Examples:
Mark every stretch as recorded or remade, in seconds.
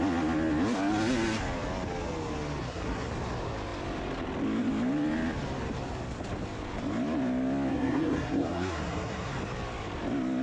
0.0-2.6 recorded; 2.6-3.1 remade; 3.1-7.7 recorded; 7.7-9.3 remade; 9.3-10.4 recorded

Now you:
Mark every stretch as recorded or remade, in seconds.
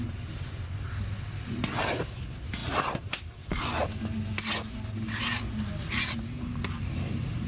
0.0-7.5 recorded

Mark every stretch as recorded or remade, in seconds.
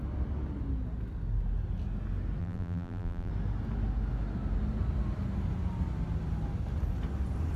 0.0-2.4 recorded; 2.4-3.3 remade; 3.3-7.6 recorded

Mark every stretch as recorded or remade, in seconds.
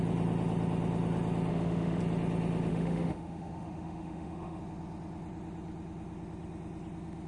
0.0-1.5 recorded; 1.5-2.0 remade; 2.0-2.7 recorded; 2.7-4.6 remade; 4.6-7.3 recorded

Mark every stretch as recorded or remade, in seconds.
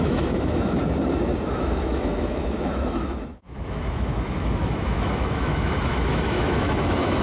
0.0-0.8 remade; 0.8-1.5 recorded; 1.5-7.2 remade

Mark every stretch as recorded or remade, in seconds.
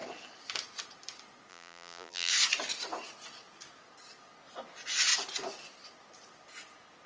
0.0-1.5 recorded; 1.5-2.3 remade; 2.3-7.1 recorded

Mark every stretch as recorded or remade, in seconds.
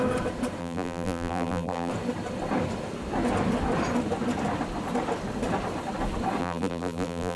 0.0-0.6 recorded; 0.6-1.9 remade; 1.9-6.4 recorded; 6.4-7.4 remade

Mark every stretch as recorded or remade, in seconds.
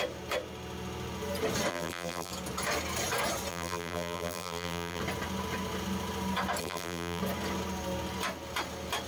0.0-1.7 recorded; 1.7-2.3 remade; 2.3-3.5 recorded; 3.5-5.0 remade; 5.0-6.6 recorded; 6.6-7.2 remade; 7.2-9.1 recorded